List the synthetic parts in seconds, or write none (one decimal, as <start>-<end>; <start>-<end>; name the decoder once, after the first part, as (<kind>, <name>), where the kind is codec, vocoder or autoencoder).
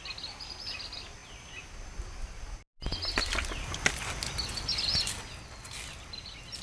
none